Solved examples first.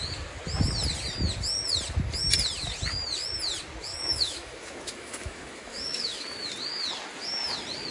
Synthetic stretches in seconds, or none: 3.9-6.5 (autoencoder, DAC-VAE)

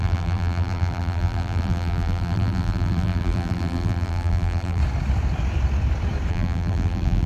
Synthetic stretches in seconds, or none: 0.0-4.8 (vocoder, BigVGAN v2); 6.3-7.3

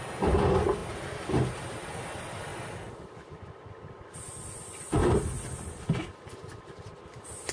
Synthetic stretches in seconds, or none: none

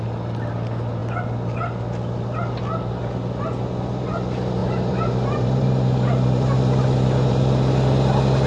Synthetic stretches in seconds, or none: 4.6-7.3 (vocoder, BigVGAN v2)